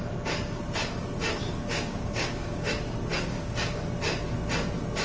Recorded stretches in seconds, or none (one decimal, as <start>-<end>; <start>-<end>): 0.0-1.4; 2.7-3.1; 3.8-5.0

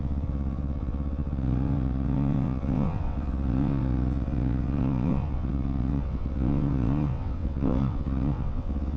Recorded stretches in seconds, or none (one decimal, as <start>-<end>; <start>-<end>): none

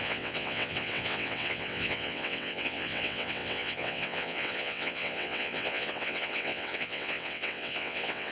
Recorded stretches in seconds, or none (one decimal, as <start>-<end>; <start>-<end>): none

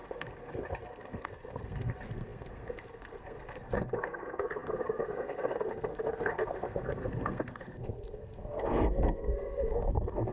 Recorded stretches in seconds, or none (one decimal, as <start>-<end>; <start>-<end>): none

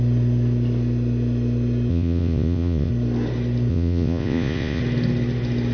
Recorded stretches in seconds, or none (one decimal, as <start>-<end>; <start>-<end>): 0.0-1.9; 2.9-3.7; 4.8-5.7

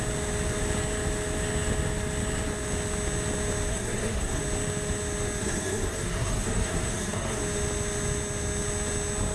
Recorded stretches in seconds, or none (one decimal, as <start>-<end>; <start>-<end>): 0.0-3.7; 4.4-5.4; 7.4-9.3

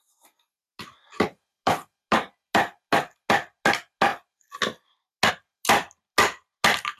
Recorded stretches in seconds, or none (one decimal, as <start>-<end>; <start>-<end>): 0.0-7.0

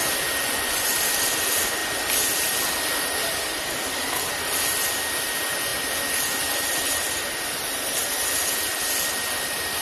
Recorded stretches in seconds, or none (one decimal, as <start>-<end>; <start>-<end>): 0.0-0.4; 0.9-9.8